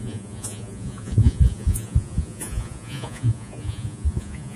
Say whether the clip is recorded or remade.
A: remade